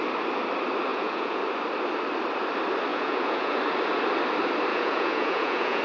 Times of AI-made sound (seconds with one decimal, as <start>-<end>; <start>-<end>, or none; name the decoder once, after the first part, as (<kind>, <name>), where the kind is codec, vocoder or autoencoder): 0.9-1.4 (vocoder, Vocos); 2.9-3.6; 4.7-5.8